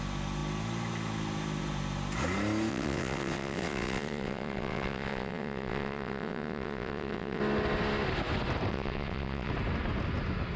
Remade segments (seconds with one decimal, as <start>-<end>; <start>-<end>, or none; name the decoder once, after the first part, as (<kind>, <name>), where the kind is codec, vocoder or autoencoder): 2.7-7.4 (vocoder, WaveNeXt); 8.7-9.5